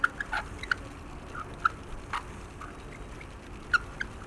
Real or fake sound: real